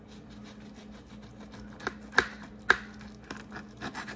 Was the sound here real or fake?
real